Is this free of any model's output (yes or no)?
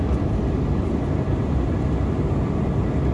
yes